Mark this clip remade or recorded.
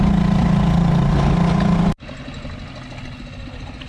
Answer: recorded